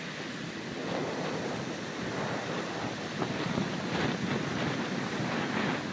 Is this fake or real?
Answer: real